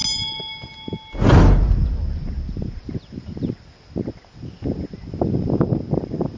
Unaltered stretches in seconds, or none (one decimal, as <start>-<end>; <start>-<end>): 0.0-6.4